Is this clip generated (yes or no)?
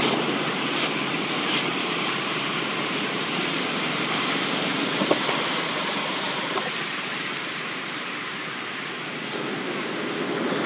no